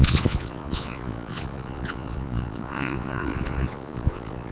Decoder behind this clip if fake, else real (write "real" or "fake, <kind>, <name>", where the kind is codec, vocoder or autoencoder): fake, vocoder, Vocos